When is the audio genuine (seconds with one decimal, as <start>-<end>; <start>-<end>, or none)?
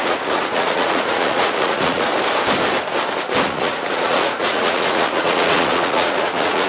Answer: 2.1-3.4